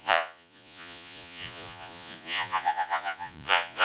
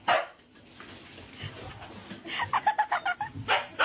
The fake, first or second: first